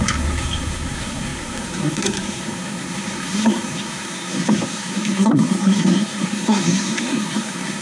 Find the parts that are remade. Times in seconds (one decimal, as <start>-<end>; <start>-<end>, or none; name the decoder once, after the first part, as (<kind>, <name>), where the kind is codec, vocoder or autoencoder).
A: 0.0-7.8 (codec, SNAC)